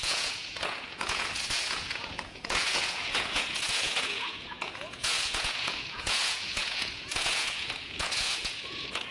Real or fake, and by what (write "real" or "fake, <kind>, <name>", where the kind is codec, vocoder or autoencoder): fake, vocoder, Vocos